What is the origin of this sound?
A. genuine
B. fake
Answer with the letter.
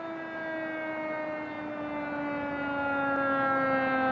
A